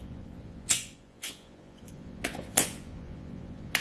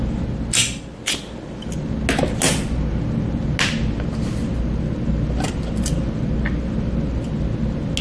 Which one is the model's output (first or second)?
first